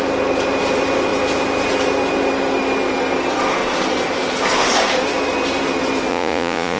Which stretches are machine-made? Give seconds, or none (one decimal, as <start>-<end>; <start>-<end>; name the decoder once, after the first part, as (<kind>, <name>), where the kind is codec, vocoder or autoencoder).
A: 6.1-6.8 (vocoder, Vocos)